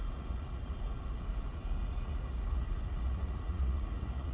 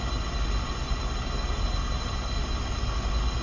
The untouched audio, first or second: second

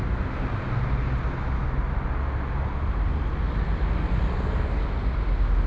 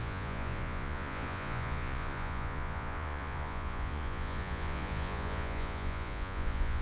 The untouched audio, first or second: first